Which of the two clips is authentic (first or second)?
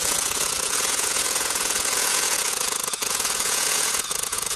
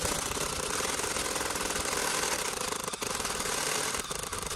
second